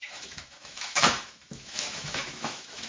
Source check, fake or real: fake